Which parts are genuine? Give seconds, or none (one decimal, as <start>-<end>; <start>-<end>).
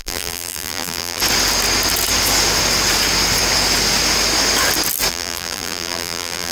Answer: 1.2-5.1